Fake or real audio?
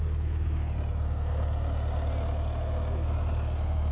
real